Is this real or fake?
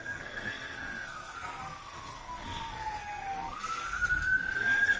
fake